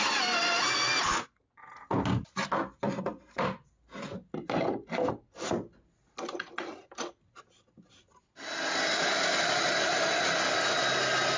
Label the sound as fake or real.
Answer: real